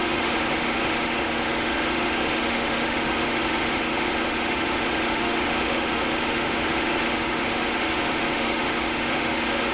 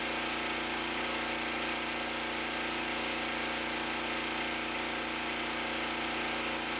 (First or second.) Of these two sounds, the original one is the second